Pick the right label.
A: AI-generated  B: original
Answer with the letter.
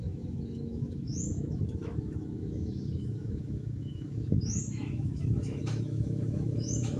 A